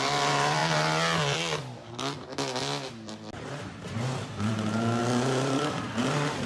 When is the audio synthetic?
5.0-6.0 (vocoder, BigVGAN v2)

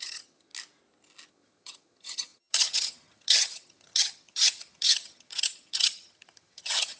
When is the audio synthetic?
0.0-0.5 (vocoder, HiFi-GAN); 1.3-7.0

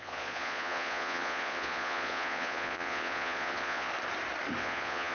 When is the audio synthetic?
0.0-3.9 (vocoder, Vocos); 4.6-5.1

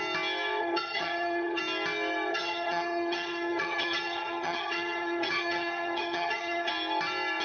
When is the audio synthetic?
0.6-1.6 (vocoder, HiFi-GAN); 2.3-6.7